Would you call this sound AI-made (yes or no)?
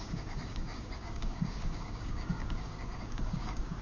yes